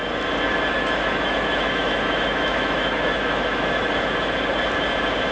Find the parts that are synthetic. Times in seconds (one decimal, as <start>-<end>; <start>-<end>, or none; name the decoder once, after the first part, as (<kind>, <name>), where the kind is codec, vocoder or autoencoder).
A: 0.7-3.9 (autoencoder, DAC-VAE)